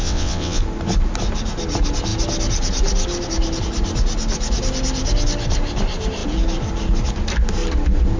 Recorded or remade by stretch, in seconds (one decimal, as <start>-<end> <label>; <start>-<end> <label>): 0.0-0.6 remade; 0.6-8.2 recorded